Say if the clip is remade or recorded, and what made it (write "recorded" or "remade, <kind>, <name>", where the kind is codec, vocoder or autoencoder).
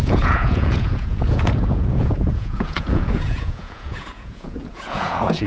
remade, vocoder, Vocos